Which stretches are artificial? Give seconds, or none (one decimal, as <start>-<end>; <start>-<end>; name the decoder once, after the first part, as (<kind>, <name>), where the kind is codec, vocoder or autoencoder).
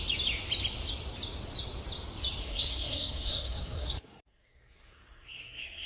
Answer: 2.4-5.9 (codec, SNAC)